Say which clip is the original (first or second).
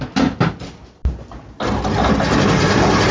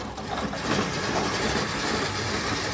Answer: first